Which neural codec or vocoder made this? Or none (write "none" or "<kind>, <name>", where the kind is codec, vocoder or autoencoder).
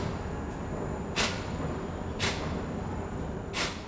none